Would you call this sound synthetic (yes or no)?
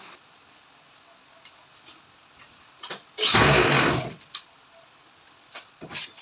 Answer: no